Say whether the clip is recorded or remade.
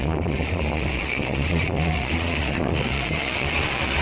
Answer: remade